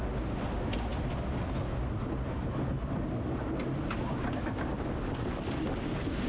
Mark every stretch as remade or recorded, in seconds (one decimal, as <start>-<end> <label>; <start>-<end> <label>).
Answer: 0.0-6.3 recorded